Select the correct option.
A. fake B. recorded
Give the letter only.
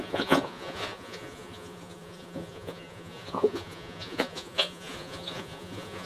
A